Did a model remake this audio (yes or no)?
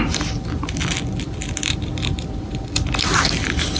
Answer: yes